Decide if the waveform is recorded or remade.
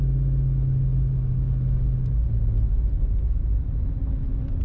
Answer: recorded